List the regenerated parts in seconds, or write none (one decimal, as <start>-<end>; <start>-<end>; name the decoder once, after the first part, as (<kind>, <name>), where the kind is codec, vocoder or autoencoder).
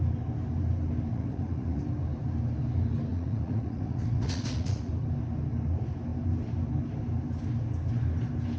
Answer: 1.1-1.8 (vocoder, Vocos); 3.1-4.9